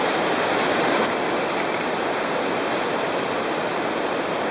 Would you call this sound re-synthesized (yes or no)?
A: no